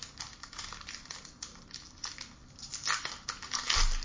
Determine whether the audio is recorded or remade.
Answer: recorded